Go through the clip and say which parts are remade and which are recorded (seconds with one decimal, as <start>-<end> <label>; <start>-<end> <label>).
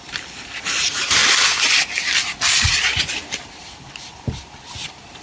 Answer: 0.0-1.2 remade; 1.2-2.5 recorded; 2.5-5.2 remade